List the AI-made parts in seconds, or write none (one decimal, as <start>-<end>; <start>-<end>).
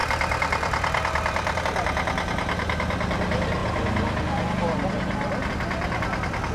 0.0-1.6